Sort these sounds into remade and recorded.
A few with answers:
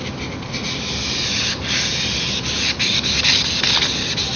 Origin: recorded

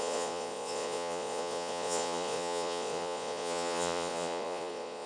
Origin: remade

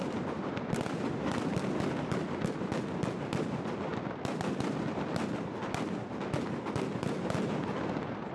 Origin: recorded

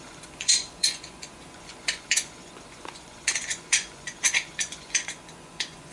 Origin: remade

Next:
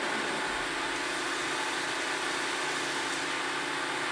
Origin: recorded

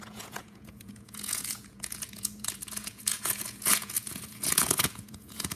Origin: remade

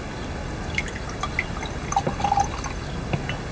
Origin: recorded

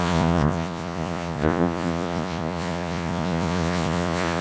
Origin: remade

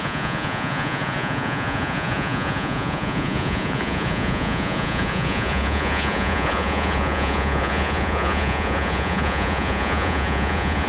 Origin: remade